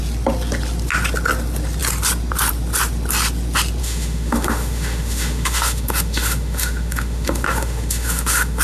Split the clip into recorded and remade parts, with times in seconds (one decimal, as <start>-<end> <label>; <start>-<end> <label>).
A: 0.0-3.8 recorded; 3.8-8.6 remade

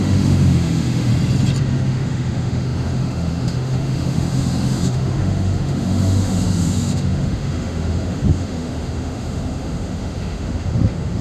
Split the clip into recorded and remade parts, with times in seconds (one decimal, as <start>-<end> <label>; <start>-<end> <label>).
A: 0.0-1.1 remade; 1.1-1.6 recorded; 1.6-11.2 remade

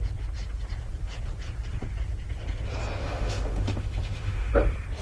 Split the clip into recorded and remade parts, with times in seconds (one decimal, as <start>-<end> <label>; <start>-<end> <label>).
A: 0.0-3.0 recorded; 3.0-4.5 remade; 4.5-5.0 recorded

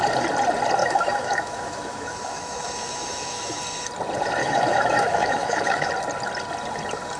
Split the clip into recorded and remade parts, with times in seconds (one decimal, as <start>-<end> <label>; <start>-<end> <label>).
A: 0.0-0.8 recorded; 0.8-3.6 remade; 3.6-4.4 recorded; 4.4-5.9 remade; 5.9-7.2 recorded

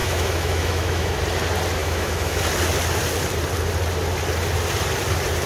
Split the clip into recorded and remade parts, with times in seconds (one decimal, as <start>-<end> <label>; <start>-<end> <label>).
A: 0.0-1.2 remade; 1.2-1.8 recorded; 1.8-2.4 remade; 2.4-5.5 recorded